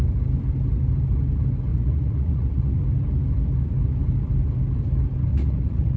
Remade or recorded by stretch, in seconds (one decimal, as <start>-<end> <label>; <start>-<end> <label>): 0.0-1.7 recorded; 1.7-2.8 remade; 2.8-5.3 recorded; 5.3-6.0 remade